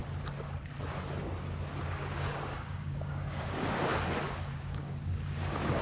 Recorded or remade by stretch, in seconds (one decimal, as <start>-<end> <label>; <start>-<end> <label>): 0.0-1.8 recorded; 1.8-3.9 remade; 3.9-4.5 recorded; 4.5-5.8 remade